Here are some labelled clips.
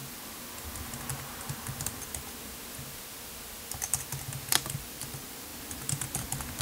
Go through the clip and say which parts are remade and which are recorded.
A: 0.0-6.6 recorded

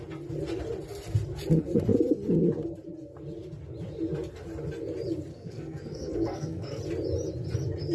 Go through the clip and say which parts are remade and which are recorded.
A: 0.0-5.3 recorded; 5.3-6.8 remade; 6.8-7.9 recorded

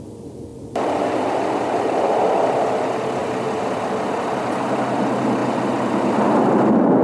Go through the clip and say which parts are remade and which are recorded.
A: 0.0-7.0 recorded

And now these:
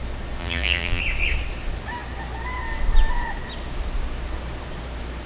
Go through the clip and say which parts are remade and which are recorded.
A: 0.0-0.4 recorded; 0.4-1.0 remade; 1.0-5.3 recorded